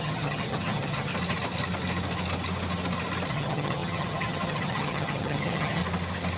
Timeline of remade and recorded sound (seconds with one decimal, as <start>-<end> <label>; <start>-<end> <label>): 0.0-1.1 remade; 1.1-3.3 recorded; 3.3-5.8 remade; 5.8-6.4 recorded